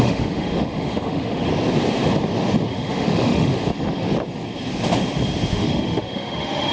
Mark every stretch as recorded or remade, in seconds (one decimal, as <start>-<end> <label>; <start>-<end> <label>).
0.0-1.5 remade; 1.5-2.7 recorded; 2.7-3.5 remade; 3.5-5.5 recorded; 5.5-6.7 remade